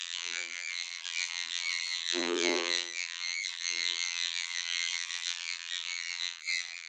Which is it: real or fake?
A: fake